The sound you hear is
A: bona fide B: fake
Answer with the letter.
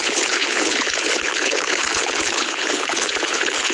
B